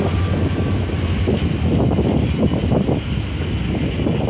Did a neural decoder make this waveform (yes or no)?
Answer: no